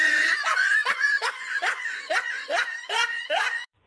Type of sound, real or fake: fake